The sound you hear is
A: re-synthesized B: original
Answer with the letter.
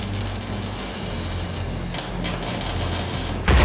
B